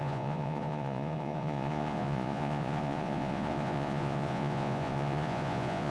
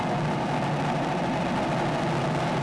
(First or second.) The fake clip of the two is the first